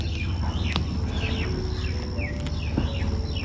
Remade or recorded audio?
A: recorded